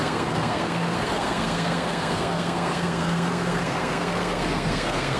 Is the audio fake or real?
fake